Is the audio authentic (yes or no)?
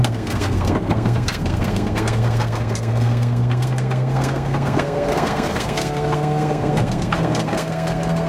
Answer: no